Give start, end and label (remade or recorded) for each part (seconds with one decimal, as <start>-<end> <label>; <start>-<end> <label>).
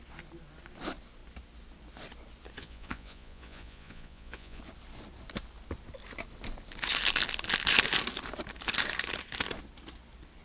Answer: 0.0-2.6 recorded; 2.6-4.6 remade; 4.6-10.4 recorded